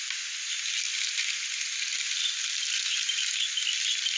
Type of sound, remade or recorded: recorded